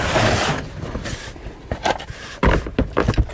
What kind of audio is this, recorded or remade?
recorded